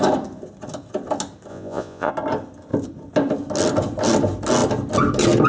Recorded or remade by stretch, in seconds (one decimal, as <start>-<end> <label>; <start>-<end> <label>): 0.0-1.5 recorded; 1.5-2.1 remade; 2.1-5.5 recorded